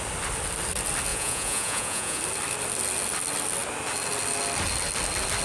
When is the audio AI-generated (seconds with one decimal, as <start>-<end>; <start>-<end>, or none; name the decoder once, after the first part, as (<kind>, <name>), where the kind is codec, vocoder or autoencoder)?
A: 1.1-2.2 (vocoder, Vocos)